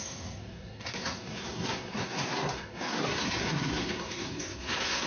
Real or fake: fake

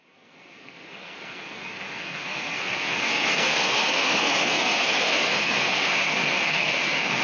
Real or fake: fake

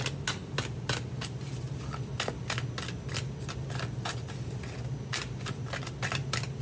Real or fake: real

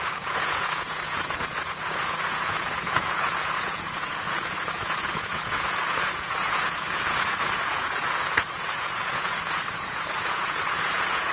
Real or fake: fake